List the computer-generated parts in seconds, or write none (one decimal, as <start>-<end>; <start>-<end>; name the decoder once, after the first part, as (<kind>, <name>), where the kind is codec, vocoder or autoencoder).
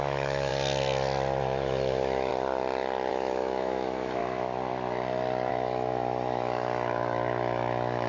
0.0-0.5 (autoencoder, DAC-VAE); 1.4-2.3; 3.1-4.2; 5.5-8.1